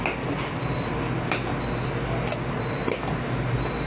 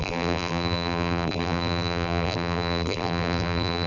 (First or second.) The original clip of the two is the first